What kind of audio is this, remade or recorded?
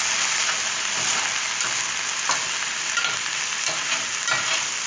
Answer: recorded